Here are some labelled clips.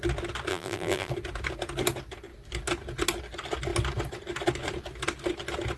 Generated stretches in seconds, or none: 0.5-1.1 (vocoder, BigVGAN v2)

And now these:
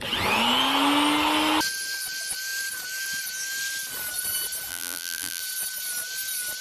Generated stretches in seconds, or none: 4.7-5.4 (vocoder, BigVGAN v2)

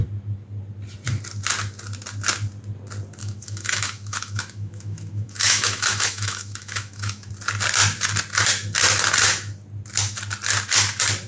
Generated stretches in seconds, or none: 3.2-7.3 (autoencoder, DAC-VAE)

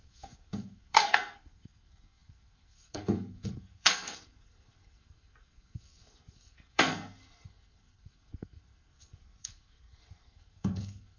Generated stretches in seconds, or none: 0.0-11.2 (codec, SNAC)

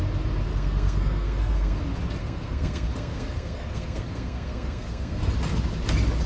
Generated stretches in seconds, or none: 0.5-1.8 (codec, SNAC); 2.2-5.2

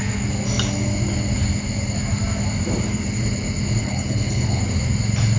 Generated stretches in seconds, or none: 3.8-4.6 (codec, HILCodec)

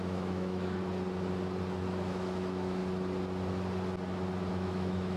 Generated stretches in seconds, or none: 0.0-0.8 (autoencoder, DAC-VAE); 1.9-2.8; 4.5-5.2